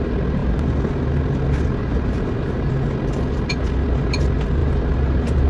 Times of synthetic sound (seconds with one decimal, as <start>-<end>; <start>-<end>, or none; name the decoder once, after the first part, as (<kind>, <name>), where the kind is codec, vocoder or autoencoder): 1.8-2.7 (vocoder, BigVGAN v2); 4.6-5.5